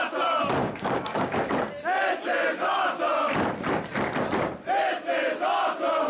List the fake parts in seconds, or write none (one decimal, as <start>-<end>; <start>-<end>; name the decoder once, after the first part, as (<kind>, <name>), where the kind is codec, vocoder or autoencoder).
0.6-1.5 (codec, DAC)